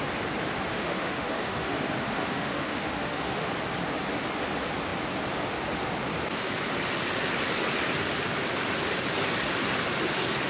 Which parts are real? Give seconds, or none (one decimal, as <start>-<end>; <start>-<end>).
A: 0.0-0.7; 3.5-10.5